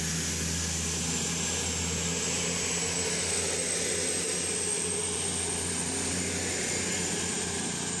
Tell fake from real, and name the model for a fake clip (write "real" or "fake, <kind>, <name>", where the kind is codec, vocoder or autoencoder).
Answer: real